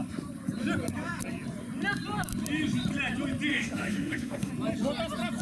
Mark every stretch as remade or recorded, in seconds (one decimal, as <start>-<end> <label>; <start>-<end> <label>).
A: 0.0-3.5 recorded; 3.5-4.5 remade; 4.5-5.4 recorded